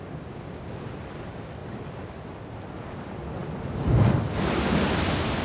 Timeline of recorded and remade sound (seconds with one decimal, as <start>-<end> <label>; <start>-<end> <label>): 0.0-1.6 recorded; 1.6-2.1 remade; 2.1-5.4 recorded

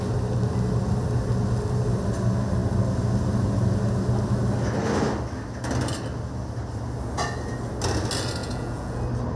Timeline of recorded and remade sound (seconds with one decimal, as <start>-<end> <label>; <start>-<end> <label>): 0.0-8.4 recorded; 8.4-9.0 remade; 9.0-9.4 recorded

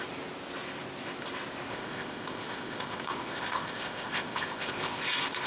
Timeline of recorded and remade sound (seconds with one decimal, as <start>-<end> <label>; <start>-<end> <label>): 0.0-1.7 recorded; 1.7-5.0 remade; 5.0-5.5 recorded

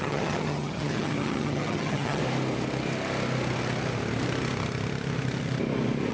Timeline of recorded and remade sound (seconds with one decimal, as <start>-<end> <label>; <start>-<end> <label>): 0.0-2.2 remade; 2.2-6.1 recorded

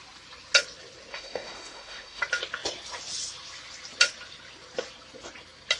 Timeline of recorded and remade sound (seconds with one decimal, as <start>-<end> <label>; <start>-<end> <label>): 0.0-1.1 recorded; 1.1-2.2 remade; 2.2-5.8 recorded

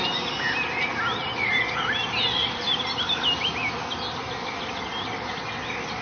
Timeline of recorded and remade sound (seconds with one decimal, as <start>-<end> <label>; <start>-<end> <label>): 0.0-6.0 recorded

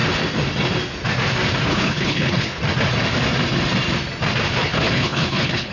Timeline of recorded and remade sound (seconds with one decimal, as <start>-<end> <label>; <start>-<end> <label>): 0.0-1.7 recorded; 1.7-2.6 remade; 2.6-4.6 recorded; 4.6-5.7 remade

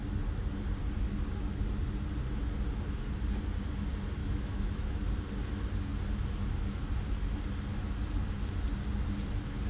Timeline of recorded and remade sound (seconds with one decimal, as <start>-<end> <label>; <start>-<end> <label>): 0.0-4.2 recorded; 4.2-5.0 remade; 5.0-9.7 recorded